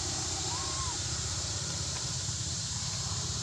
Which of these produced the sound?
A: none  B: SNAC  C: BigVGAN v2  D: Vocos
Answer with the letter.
C